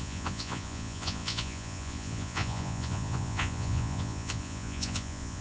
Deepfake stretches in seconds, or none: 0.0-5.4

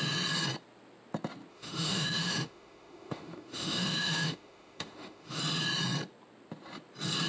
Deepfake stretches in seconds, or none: 1.5-5.4

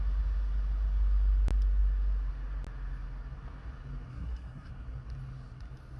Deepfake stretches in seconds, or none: 4.1-4.7

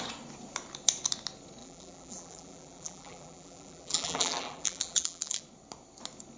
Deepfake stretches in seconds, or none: 1.6-5.4

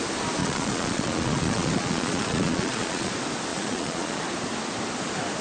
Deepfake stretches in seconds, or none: 0.4-3.1; 3.5-4.2

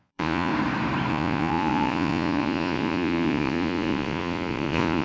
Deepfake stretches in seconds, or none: 0.0-0.5; 1.1-5.0

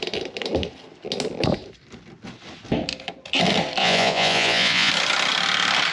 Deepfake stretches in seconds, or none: 3.8-4.9